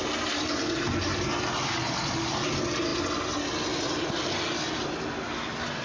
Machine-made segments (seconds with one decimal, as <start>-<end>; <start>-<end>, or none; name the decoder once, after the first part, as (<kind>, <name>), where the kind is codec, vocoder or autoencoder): none